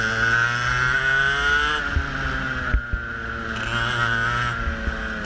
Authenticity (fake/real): real